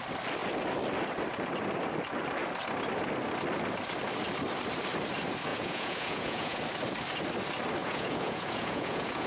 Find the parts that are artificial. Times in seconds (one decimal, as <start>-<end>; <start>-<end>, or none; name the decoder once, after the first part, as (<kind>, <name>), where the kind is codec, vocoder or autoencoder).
5.5-6.6 (vocoder, Vocos); 7.8-9.3